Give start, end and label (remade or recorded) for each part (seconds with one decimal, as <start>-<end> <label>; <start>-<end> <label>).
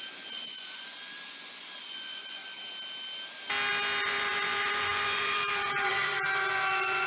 0.0-2.4 remade; 2.4-4.0 recorded; 4.0-7.1 remade